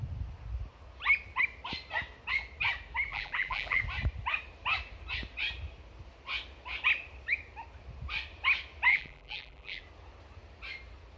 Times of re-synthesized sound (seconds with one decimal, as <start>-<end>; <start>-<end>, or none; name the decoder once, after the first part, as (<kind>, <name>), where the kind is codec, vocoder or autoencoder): 3.1-3.8 (vocoder, BigVGAN v2); 8.9-9.8